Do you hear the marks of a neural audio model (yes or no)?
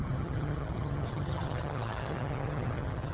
yes